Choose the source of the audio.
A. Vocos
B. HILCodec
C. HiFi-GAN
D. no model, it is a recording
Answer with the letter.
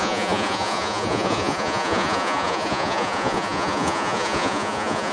A